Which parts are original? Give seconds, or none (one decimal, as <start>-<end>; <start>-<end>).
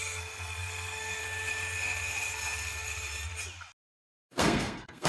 1.2-4.3